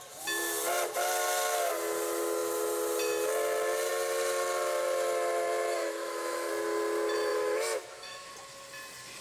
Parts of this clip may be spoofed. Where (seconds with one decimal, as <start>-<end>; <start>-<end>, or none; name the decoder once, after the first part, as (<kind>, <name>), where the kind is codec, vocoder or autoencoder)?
5.8-6.5 (autoencoder, DAC-VAE); 7.3-8.3